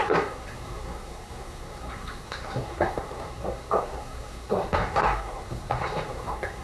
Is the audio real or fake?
fake